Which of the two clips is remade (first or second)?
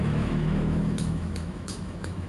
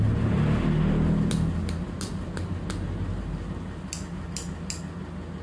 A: first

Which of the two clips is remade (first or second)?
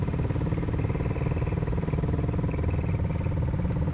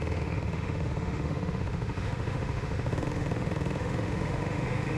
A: second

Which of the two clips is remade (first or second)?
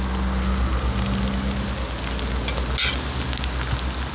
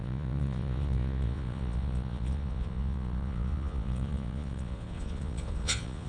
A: second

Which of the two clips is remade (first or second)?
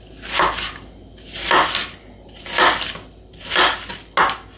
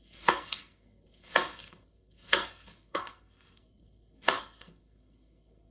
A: second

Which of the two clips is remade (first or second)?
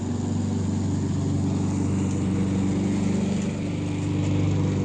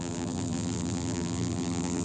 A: second